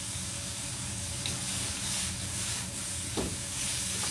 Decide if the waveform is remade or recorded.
remade